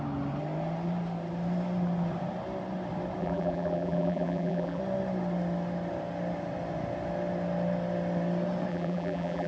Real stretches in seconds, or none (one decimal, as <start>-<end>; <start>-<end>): 0.0-3.2; 4.8-8.7